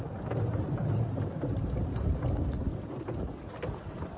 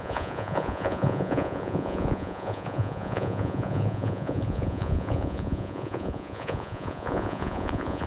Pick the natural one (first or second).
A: first